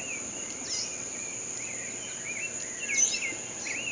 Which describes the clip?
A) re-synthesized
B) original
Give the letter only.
B